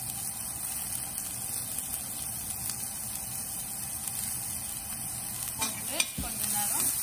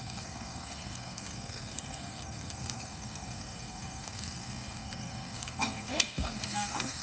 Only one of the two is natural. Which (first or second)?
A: first